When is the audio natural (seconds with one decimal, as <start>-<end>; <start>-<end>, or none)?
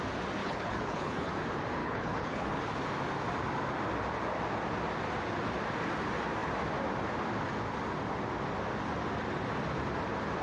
0.0-0.4; 1.3-1.8; 2.6-10.4